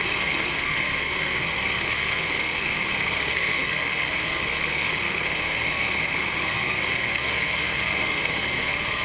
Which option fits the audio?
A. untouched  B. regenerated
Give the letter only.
B